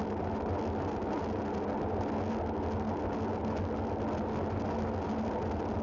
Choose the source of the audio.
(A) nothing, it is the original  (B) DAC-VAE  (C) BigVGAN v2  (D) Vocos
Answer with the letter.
A